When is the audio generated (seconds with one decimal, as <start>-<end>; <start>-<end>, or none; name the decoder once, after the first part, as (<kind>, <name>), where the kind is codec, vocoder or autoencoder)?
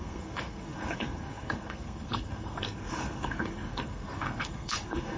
0.0-5.2 (codec, SNAC)